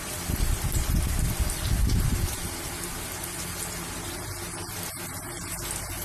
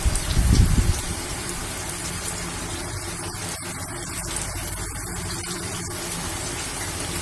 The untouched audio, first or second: first